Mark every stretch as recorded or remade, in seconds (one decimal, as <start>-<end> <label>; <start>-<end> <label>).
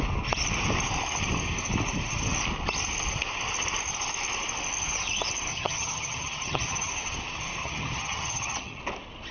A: 0.0-5.5 recorded; 5.5-6.9 remade; 6.9-7.6 recorded; 7.6-8.8 remade; 8.8-9.3 recorded